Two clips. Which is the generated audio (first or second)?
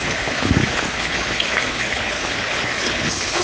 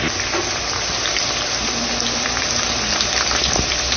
first